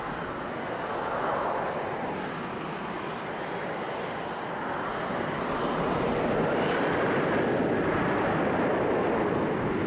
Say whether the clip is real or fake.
real